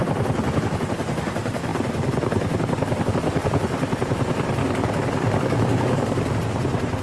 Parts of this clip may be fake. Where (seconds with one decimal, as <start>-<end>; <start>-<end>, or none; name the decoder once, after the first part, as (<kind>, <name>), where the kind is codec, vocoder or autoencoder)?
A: 4.6-6.4 (codec, DAC)